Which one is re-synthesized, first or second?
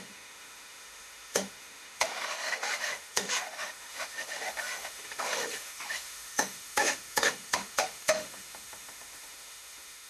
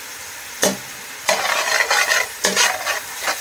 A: first